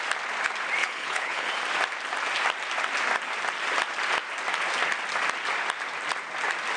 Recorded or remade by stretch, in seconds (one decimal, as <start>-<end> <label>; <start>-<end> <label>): 0.0-0.8 recorded; 0.8-1.5 remade; 1.5-6.8 recorded